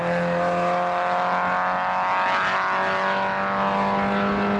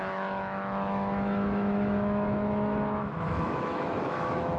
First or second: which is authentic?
first